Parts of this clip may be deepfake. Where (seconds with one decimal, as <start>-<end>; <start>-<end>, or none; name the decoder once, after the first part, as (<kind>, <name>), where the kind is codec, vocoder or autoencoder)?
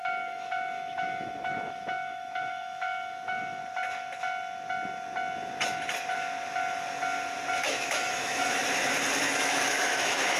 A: 0.0-3.6 (autoencoder, DAC-VAE); 7.6-8.6; 9.2-10.4